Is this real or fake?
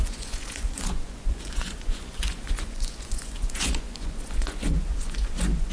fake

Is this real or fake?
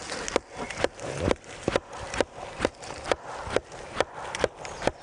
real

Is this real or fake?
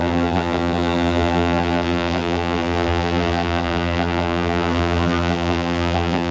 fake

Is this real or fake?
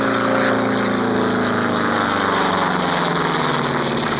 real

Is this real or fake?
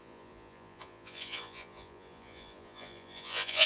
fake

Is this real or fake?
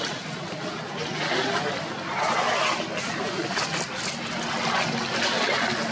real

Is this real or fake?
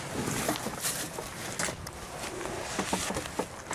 real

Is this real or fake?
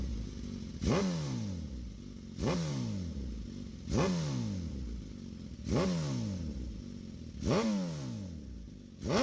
real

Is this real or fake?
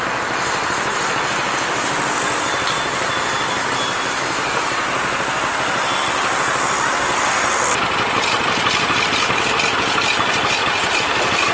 real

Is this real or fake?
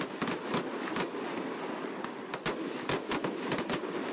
real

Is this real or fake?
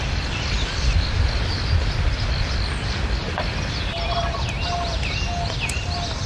real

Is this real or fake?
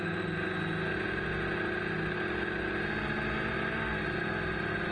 real